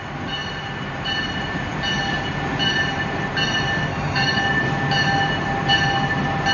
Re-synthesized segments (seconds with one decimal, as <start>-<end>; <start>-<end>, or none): 3.9-4.4

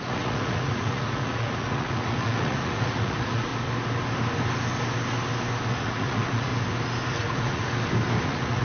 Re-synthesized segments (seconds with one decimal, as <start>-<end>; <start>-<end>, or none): 0.0-3.5; 5.7-6.5; 7.1-7.6; 8.2-8.6

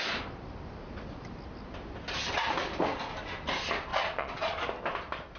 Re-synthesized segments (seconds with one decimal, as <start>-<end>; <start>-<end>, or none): 3.9-4.6

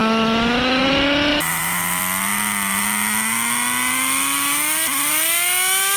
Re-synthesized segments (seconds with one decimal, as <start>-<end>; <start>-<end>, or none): 1.3-2.0

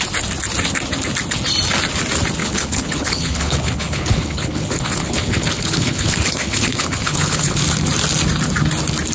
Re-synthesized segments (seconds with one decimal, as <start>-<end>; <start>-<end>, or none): 2.4-7.6

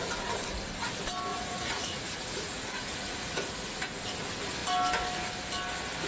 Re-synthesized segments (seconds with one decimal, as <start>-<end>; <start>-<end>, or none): 1.3-4.0